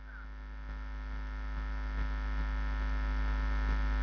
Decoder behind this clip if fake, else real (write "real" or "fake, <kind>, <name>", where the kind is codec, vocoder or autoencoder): real